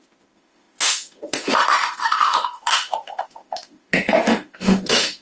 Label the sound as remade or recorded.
remade